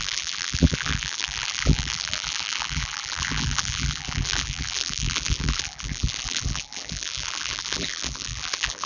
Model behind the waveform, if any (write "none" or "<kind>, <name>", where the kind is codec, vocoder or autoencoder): vocoder, BigVGAN v2